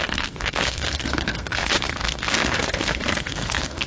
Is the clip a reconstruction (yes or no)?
yes